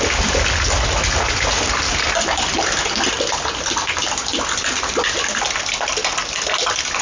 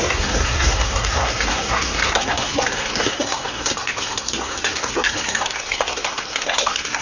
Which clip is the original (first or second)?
first